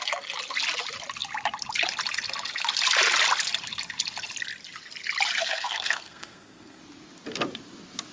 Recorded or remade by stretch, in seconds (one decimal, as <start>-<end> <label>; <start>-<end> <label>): 0.0-5.4 recorded; 5.4-6.8 remade; 6.8-8.1 recorded